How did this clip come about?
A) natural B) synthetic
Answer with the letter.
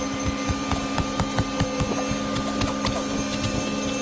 A